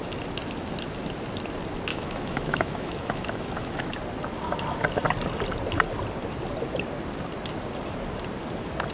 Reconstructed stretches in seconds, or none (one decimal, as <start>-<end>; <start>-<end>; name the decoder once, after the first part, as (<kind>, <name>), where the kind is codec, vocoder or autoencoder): 1.9-3.9 (autoencoder, DAC-VAE)